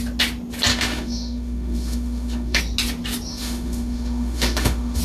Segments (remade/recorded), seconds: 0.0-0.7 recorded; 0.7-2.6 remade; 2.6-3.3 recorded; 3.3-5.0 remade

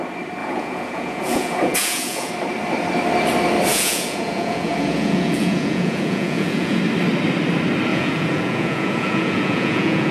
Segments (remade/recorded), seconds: 0.0-0.4 recorded; 0.4-2.3 remade; 2.3-3.7 recorded; 3.7-6.8 remade; 6.8-7.9 recorded; 7.9-10.1 remade

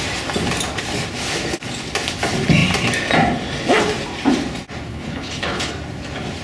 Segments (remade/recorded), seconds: 0.0-4.9 recorded; 4.9-5.7 remade; 5.7-6.4 recorded

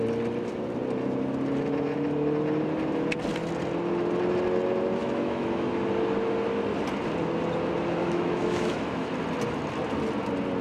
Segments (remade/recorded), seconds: 0.0-5.0 recorded; 5.0-5.7 remade; 5.7-8.0 recorded; 8.0-9.1 remade; 9.1-10.6 recorded

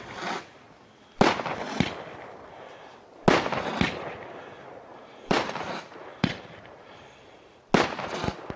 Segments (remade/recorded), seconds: 0.0-4.9 recorded; 4.9-7.6 remade; 7.6-8.6 recorded

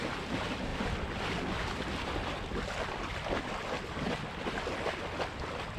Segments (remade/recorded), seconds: 0.0-5.8 recorded

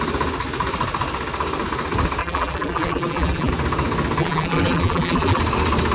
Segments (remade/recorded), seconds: 0.0-2.2 recorded; 2.2-3.5 remade; 3.5-4.2 recorded; 4.2-5.4 remade; 5.4-5.9 recorded

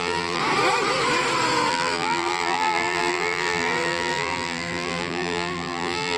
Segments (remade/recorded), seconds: 0.0-0.4 remade; 0.4-1.7 recorded; 1.7-6.2 remade